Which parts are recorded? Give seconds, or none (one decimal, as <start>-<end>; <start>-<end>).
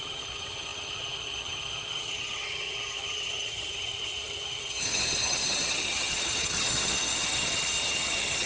none